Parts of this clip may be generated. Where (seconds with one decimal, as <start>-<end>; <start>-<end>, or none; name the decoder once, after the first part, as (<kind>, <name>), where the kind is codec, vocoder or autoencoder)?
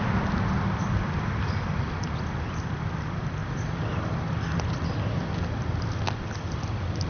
3.4-4.1 (vocoder, BigVGAN v2)